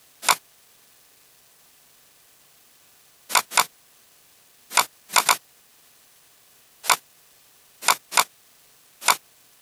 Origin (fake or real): real